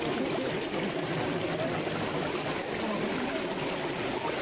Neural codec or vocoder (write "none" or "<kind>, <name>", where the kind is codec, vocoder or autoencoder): none